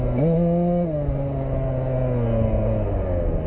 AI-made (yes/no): no